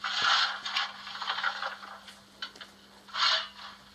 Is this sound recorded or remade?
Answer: recorded